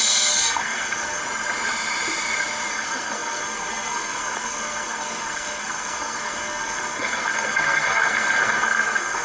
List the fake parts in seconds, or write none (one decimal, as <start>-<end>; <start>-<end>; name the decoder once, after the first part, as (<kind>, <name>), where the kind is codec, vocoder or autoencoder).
0.0-1.2 (codec, SNAC); 2.7-9.2